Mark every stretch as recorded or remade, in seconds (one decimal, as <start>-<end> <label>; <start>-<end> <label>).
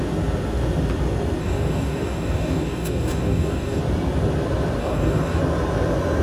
0.0-1.4 recorded; 1.4-3.8 remade; 3.8-4.8 recorded; 4.8-5.4 remade; 5.4-6.2 recorded